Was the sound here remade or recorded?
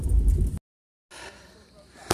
recorded